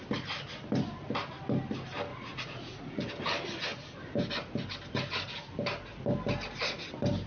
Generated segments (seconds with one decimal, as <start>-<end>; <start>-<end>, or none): 2.1-3.1